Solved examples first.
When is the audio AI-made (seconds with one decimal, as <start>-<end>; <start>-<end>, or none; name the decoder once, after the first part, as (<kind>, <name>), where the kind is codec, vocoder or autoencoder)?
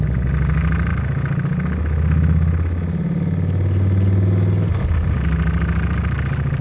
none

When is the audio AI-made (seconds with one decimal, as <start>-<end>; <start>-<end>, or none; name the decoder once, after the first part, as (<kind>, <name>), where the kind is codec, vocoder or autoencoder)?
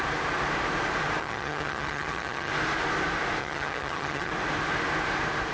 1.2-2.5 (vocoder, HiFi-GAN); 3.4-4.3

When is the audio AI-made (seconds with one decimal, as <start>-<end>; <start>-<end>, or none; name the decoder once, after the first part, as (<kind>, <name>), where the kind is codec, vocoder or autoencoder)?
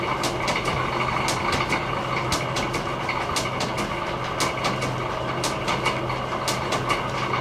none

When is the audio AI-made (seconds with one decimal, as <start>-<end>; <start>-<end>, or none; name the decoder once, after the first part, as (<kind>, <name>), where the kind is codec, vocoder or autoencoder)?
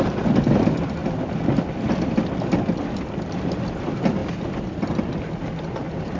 none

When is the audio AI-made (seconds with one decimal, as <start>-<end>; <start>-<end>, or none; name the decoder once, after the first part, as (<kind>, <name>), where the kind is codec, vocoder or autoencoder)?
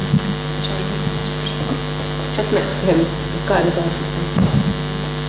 2.7-4.6 (vocoder, BigVGAN v2)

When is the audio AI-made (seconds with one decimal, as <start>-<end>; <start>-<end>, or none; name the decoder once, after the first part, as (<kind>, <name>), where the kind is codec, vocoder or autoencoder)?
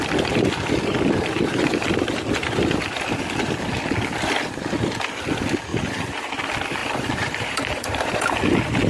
5.7-6.3 (vocoder, BigVGAN v2); 6.8-8.4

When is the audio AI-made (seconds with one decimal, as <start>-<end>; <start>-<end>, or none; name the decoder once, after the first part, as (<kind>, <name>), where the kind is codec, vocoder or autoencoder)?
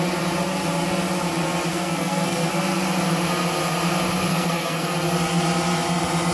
1.7-2.5 (codec, SNAC); 4.3-4.9